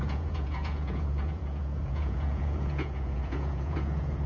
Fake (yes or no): yes